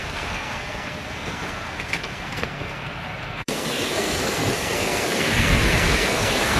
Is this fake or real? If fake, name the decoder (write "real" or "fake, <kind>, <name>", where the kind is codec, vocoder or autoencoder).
fake, codec, SNAC